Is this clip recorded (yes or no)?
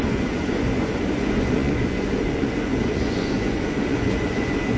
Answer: no